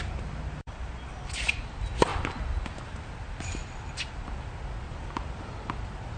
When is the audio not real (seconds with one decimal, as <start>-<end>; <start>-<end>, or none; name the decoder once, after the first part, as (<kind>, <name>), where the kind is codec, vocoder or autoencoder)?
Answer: 4.9-5.5 (vocoder, BigVGAN v2)

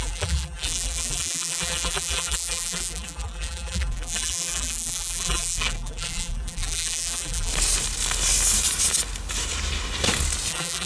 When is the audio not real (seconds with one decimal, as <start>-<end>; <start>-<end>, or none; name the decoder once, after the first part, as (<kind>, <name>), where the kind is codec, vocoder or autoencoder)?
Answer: 0.0-7.5 (vocoder, BigVGAN v2); 10.5-10.9

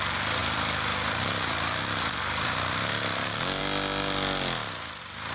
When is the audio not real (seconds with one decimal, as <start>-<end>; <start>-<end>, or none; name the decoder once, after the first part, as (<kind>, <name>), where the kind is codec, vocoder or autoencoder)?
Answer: 0.4-3.6 (vocoder, BigVGAN v2)